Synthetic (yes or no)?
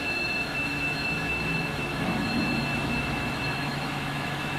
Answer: yes